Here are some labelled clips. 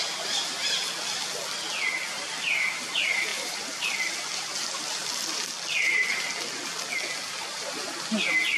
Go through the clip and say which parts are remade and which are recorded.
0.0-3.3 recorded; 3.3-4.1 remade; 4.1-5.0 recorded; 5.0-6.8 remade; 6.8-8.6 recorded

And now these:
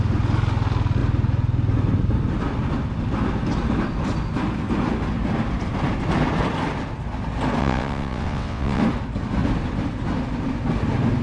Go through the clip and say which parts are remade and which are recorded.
0.0-7.6 recorded; 7.6-8.8 remade; 8.8-11.2 recorded

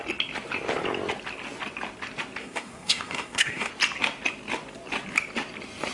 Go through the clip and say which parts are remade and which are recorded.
0.0-2.4 recorded; 2.4-3.7 remade; 3.7-5.9 recorded

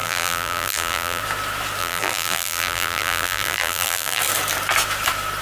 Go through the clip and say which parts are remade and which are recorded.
0.0-1.2 remade; 1.2-1.8 recorded; 1.8-4.2 remade; 4.2-5.4 recorded

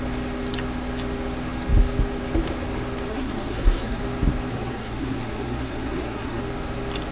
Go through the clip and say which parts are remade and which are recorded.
0.0-3.1 recorded; 3.1-4.0 remade; 4.0-4.5 recorded; 4.5-6.4 remade; 6.4-7.1 recorded

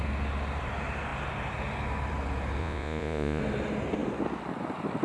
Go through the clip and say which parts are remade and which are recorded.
0.0-2.6 recorded; 2.6-3.4 remade; 3.4-5.0 recorded

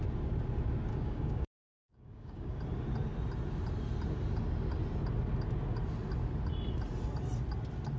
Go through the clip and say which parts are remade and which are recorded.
0.0-0.9 recorded; 0.9-2.6 remade; 2.6-8.0 recorded

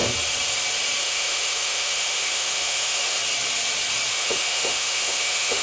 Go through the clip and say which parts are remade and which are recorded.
0.0-1.0 recorded; 1.0-3.2 remade; 3.2-4.1 recorded; 4.1-5.6 remade